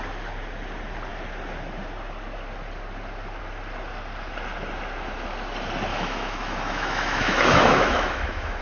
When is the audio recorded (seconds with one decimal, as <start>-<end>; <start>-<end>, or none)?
0.0-5.9